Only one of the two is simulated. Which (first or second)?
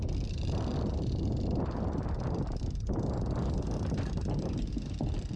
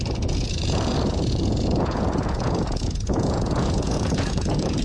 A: second